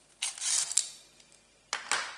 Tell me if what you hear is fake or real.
real